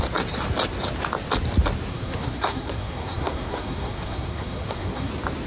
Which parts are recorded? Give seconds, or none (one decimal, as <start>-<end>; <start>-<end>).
0.0-1.9; 5.1-5.5